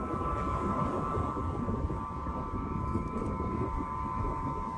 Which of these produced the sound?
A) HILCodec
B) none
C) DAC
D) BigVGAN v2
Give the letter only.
C